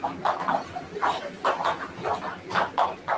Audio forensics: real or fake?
real